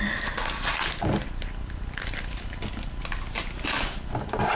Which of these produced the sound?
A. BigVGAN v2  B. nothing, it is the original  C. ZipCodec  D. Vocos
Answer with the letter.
B